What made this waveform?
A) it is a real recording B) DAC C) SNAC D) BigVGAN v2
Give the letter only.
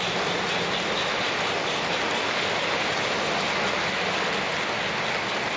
A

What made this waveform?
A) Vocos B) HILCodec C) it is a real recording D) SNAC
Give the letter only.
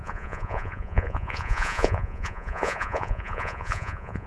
A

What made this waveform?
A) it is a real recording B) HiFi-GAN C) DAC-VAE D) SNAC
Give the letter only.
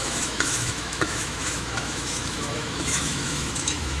C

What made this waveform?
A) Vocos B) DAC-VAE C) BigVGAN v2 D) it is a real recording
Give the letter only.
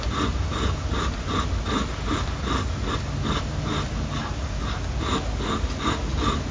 D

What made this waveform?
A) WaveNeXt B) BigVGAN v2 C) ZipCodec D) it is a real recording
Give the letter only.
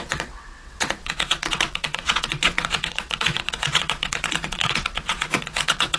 A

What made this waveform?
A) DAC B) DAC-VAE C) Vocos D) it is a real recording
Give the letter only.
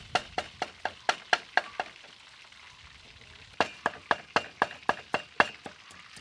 D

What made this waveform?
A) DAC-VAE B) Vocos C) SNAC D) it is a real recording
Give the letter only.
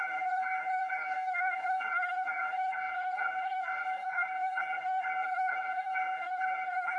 C